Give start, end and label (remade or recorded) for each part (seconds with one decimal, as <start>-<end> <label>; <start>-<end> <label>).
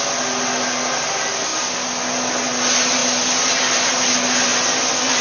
0.0-5.2 recorded